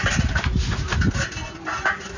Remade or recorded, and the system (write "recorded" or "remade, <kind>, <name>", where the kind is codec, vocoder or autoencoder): recorded